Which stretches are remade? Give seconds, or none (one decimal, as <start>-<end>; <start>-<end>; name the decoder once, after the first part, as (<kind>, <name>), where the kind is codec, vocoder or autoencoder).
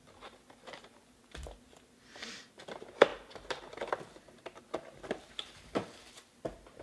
3.1-3.9 (vocoder, BigVGAN v2)